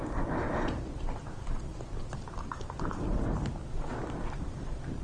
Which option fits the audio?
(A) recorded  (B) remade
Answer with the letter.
A